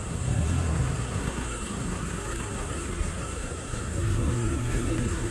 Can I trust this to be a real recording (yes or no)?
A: no